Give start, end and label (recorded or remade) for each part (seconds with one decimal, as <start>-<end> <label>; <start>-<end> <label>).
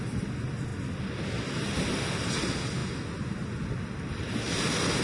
0.0-5.0 recorded